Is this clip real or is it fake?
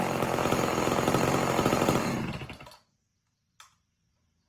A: real